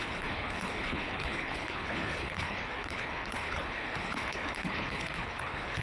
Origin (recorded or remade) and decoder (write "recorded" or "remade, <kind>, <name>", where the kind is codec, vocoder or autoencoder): remade, codec, HILCodec